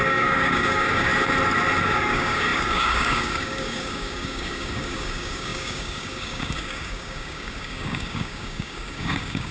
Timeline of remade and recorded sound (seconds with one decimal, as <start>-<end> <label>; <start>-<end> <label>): 0.0-1.1 remade; 1.1-1.8 recorded; 1.8-9.5 remade